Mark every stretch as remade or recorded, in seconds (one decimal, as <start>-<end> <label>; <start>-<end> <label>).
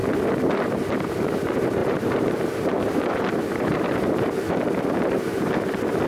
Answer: 0.0-0.5 recorded; 0.5-6.1 remade